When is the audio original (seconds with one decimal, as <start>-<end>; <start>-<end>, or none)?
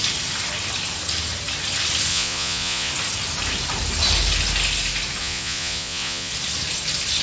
0.0-2.1; 2.9-5.2; 6.3-7.2